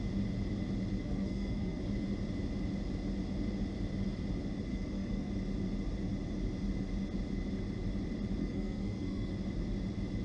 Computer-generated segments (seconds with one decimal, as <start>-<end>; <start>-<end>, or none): 0.9-1.8; 4.7-5.3; 8.4-9.3